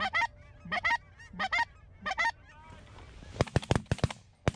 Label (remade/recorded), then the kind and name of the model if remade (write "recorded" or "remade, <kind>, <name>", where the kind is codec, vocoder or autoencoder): recorded